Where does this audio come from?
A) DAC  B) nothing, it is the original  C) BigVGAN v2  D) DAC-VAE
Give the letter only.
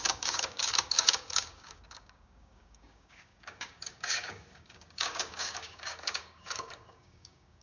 A